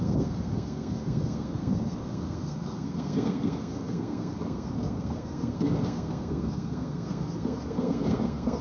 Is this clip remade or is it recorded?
remade